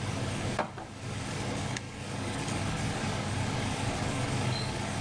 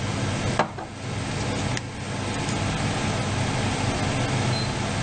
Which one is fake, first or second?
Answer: first